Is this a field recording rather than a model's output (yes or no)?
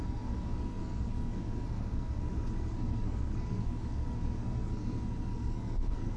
no